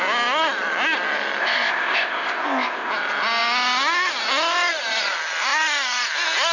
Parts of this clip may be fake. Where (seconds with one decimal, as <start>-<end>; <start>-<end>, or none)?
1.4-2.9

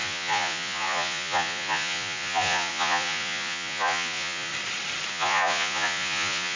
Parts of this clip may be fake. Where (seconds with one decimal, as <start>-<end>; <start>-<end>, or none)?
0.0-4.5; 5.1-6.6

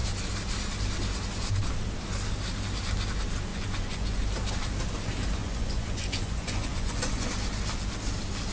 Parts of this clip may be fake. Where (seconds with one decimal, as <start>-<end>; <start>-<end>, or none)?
3.5-4.2; 5.4-7.3

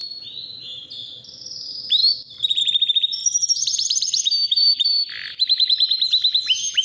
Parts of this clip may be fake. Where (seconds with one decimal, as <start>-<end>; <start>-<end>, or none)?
2.0-2.6; 3.2-5.1

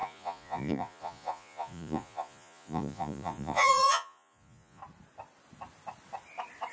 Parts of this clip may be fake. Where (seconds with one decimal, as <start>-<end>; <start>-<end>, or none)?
0.0-4.8

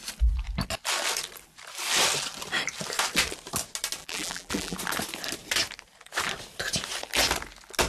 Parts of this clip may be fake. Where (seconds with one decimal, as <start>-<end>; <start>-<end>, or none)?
4.0-4.8